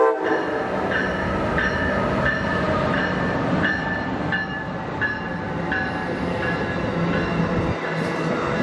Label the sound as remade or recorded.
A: recorded